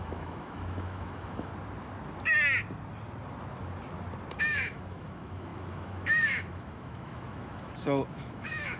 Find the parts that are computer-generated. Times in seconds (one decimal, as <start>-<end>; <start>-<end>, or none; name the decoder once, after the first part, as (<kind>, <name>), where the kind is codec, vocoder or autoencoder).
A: 0.0-1.5 (autoencoder, DAC-VAE); 4.4-8.8